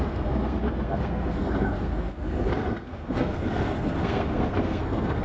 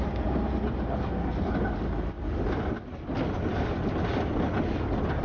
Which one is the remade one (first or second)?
first